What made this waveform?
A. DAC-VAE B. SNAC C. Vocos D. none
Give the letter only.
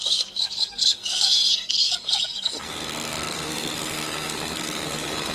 B